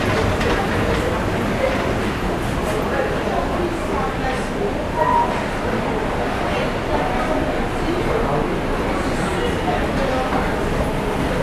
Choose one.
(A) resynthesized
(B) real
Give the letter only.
B